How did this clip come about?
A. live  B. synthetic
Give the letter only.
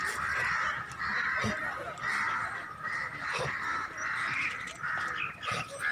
A